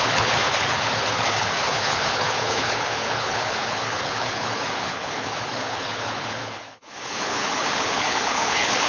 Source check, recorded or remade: remade